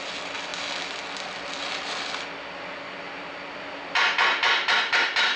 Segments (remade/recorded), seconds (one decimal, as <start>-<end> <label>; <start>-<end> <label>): 0.0-5.4 recorded